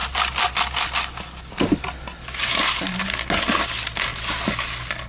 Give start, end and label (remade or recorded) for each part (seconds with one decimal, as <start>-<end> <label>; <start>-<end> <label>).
0.0-5.1 recorded